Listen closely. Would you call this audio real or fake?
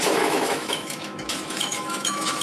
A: fake